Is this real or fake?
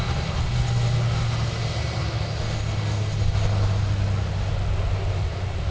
real